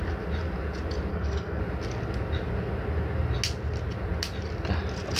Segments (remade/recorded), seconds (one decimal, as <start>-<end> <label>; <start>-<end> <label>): 0.0-1.1 recorded; 1.1-1.6 remade; 1.6-5.2 recorded